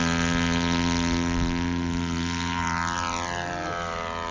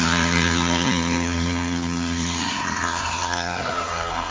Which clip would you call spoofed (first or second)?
second